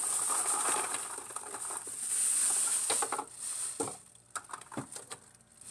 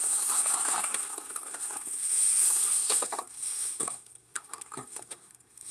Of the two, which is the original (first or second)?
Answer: first